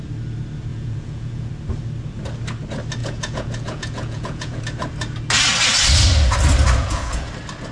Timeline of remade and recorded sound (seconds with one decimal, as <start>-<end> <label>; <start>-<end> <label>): 0.0-0.7 recorded; 0.7-1.5 remade; 1.5-3.0 recorded; 3.0-4.6 remade; 4.6-6.8 recorded; 6.8-7.3 remade; 7.3-7.7 recorded